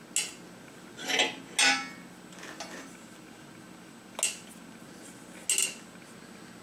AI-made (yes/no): no